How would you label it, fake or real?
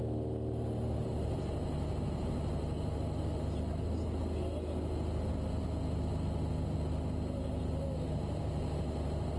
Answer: real